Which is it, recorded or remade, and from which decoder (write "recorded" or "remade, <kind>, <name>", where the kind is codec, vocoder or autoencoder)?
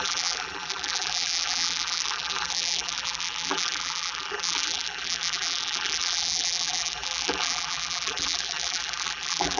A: remade, vocoder, BigVGAN v2